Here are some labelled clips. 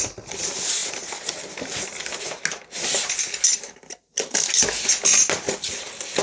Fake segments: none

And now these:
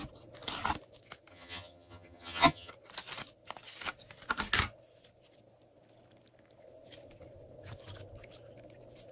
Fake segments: 1.3-2.7 (vocoder, HiFi-GAN)

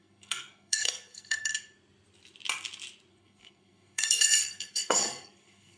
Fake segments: 0.0-1.5 (codec, SNAC); 3.1-5.8

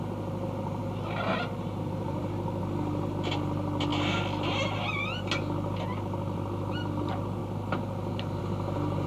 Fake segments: 0.8-2.6 (vocoder, BigVGAN v2)